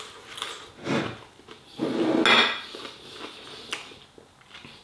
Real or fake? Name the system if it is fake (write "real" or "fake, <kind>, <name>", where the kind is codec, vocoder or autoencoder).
real